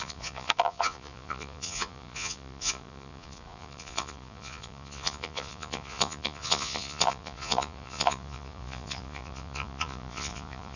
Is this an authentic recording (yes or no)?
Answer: no